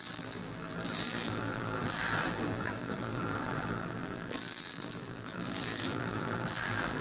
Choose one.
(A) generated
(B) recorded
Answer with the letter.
A